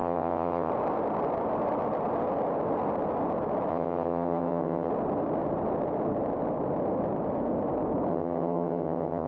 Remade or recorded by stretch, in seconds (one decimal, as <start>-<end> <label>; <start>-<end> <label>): 0.0-0.7 remade; 0.7-3.7 recorded; 3.7-4.9 remade; 4.9-8.1 recorded; 8.1-9.3 remade